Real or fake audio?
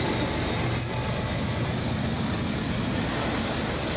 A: real